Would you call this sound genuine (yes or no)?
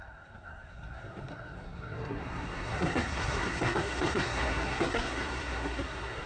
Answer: no